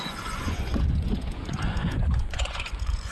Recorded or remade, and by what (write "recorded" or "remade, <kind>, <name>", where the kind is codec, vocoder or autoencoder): remade, vocoder, Vocos